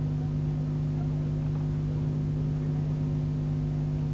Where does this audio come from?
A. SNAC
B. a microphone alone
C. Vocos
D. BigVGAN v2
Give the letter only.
B